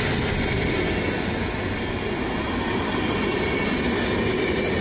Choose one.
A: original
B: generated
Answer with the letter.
A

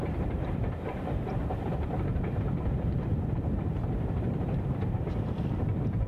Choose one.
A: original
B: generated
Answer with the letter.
B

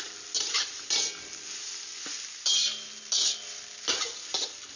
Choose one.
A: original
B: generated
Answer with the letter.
A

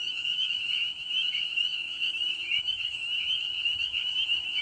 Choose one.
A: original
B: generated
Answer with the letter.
B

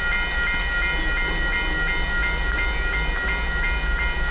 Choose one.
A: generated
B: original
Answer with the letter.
B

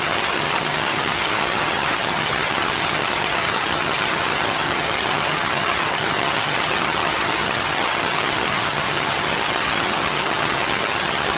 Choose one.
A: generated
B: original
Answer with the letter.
A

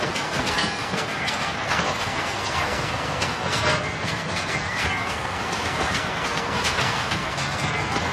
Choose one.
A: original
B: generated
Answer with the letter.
B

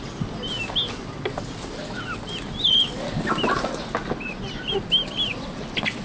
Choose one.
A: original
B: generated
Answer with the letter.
A